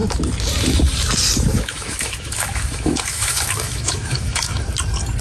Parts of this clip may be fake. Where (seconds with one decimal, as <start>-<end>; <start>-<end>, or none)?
1.5-4.6